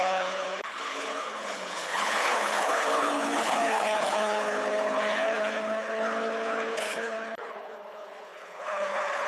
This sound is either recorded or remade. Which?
remade